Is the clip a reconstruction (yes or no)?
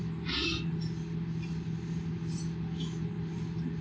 no